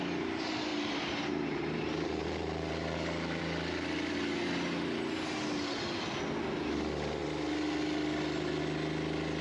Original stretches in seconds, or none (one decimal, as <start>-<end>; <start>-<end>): 0.0-0.7; 3.4-9.4